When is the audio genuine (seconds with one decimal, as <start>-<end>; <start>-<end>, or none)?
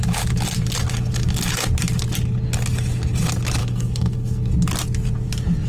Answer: 0.0-3.6; 4.5-5.7